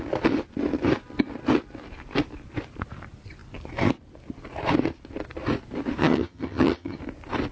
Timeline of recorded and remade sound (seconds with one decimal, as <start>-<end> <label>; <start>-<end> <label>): 0.0-6.0 recorded; 6.0-7.0 remade; 7.0-7.5 recorded